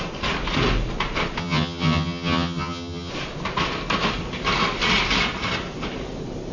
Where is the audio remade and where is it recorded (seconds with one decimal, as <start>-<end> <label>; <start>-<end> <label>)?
0.0-1.4 recorded; 1.4-3.1 remade; 3.1-6.5 recorded